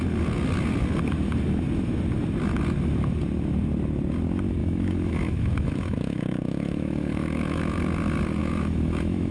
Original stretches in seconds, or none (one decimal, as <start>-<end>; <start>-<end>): 0.0-4.6; 7.8-8.4